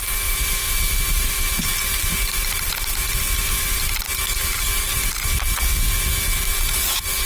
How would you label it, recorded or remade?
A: remade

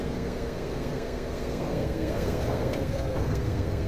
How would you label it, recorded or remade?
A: remade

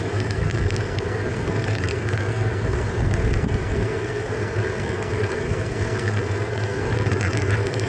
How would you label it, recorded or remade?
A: remade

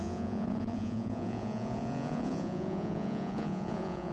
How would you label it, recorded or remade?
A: remade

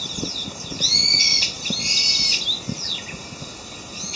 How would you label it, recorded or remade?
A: recorded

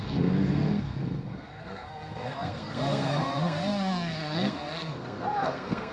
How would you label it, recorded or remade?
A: remade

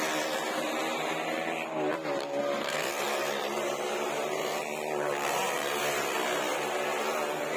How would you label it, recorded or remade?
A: recorded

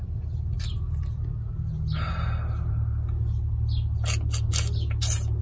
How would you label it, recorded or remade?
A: recorded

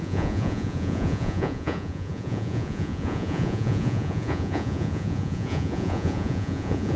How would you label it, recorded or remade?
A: remade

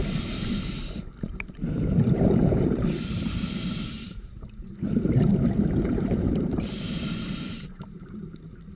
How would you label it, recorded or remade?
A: remade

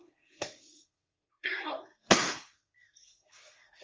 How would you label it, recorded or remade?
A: remade